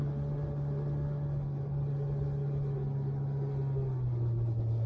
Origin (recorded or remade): recorded